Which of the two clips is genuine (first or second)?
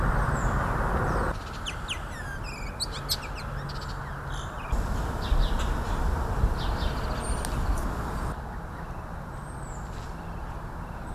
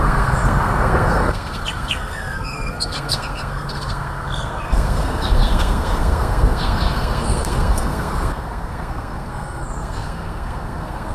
first